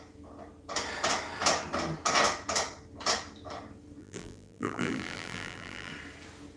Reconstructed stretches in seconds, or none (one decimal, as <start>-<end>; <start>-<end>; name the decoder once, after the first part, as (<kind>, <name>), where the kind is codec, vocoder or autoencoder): 4.0-5.9 (vocoder, BigVGAN v2)